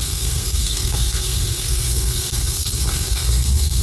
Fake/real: fake